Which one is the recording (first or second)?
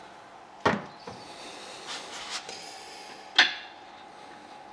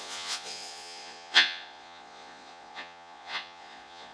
first